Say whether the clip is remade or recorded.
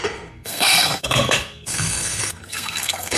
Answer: remade